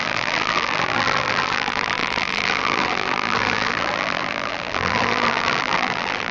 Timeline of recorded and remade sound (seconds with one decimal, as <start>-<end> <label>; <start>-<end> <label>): 0.0-6.3 remade